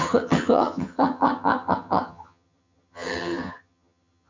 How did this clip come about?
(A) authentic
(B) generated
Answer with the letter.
B